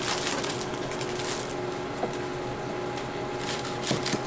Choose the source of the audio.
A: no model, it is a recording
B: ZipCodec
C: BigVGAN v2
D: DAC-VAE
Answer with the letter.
A